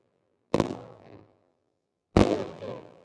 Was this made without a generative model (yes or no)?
no